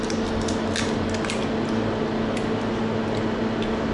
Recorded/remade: recorded